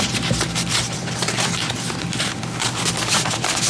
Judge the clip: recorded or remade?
remade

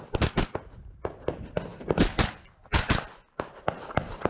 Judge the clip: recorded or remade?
recorded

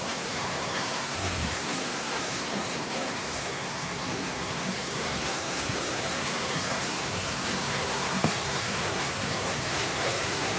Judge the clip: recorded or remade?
remade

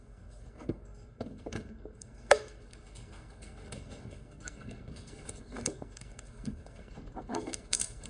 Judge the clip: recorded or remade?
remade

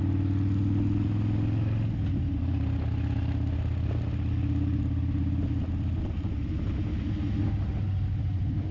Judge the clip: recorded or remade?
recorded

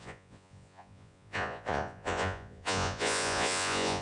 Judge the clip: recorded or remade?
remade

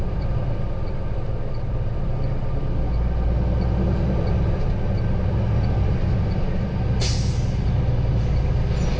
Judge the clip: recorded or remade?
recorded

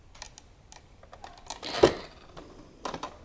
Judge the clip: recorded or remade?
recorded